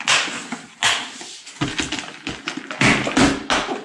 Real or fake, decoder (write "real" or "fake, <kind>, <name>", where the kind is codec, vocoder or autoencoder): real